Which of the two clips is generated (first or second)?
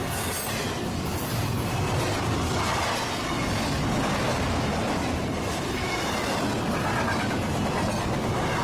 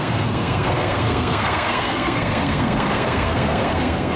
second